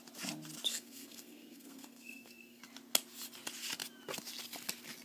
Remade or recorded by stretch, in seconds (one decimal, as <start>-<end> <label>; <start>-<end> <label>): 0.0-0.7 recorded; 0.7-2.6 remade; 2.6-5.0 recorded